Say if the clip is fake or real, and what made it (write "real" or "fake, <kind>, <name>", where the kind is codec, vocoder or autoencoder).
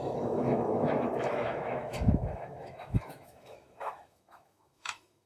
fake, autoencoder, DAC-VAE